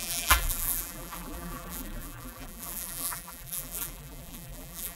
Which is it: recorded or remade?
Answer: remade